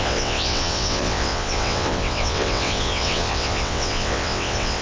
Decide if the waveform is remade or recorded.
remade